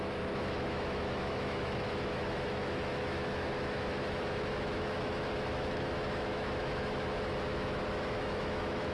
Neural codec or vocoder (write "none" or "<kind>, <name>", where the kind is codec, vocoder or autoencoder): autoencoder, DAC-VAE